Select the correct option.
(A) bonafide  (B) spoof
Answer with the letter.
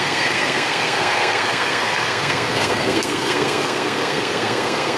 B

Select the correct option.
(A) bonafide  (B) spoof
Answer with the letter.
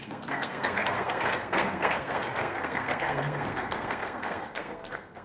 B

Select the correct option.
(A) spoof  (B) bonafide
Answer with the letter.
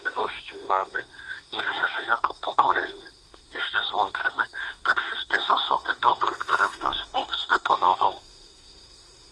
A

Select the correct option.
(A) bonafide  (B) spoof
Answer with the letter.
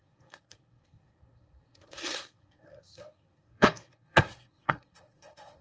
B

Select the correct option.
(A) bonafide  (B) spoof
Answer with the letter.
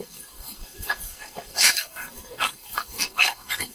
B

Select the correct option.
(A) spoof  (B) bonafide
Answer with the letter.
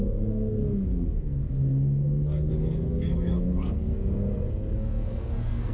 A